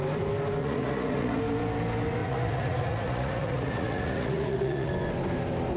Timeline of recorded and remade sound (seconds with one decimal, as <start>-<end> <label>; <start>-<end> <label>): 0.0-0.6 recorded; 0.6-1.4 remade; 1.4-2.2 recorded; 2.2-4.9 remade; 4.9-5.8 recorded